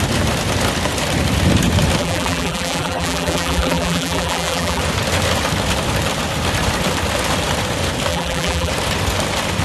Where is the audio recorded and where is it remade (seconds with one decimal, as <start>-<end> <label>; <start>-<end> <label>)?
0.0-2.0 recorded; 2.0-4.8 remade; 4.8-8.1 recorded; 8.1-8.7 remade; 8.7-9.6 recorded